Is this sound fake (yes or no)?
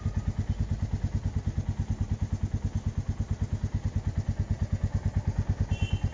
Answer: no